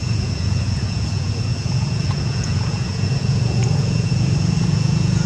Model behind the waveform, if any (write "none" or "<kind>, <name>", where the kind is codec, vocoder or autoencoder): vocoder, Vocos